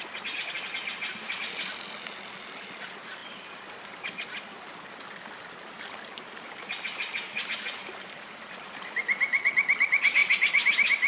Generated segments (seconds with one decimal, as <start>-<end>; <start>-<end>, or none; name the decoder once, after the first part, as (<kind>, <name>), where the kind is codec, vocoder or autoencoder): none

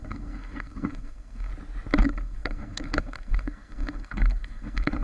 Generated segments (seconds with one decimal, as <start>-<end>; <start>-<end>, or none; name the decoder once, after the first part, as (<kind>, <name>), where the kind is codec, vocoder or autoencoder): 0.0-1.5 (codec, SNAC); 2.0-5.0

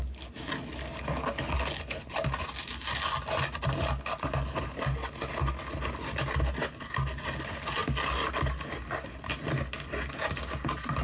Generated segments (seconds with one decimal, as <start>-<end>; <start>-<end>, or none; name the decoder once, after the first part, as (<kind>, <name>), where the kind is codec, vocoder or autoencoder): none

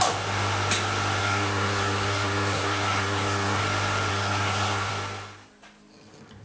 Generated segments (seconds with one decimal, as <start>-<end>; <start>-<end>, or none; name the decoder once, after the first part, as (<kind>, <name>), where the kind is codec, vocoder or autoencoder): 1.2-3.6 (codec, SNAC); 4.1-4.9

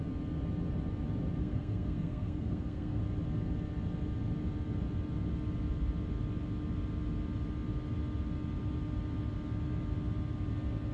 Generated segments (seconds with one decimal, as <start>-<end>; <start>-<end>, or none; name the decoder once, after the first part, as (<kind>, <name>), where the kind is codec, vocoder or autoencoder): 1.4-3.0 (codec, SNAC)

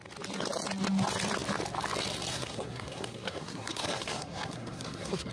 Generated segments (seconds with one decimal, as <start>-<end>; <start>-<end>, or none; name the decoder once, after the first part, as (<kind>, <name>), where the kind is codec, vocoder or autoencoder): 2.3-5.3 (codec, SNAC)

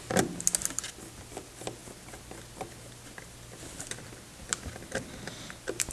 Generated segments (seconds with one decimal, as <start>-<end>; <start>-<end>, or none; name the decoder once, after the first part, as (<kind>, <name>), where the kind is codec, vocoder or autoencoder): none

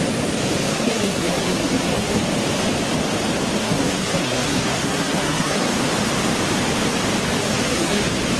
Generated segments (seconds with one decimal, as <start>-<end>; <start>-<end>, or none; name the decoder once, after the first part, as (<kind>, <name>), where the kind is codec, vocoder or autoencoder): 0.7-2.2 (codec, SNAC); 3.6-5.7; 7.4-8.0